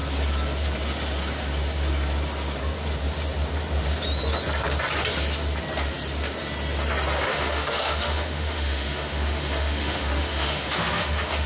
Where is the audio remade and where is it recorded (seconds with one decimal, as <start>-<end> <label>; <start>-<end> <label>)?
0.0-7.3 recorded; 7.3-11.5 remade